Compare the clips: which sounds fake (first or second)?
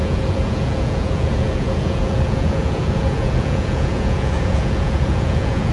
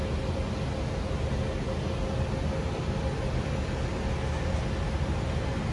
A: first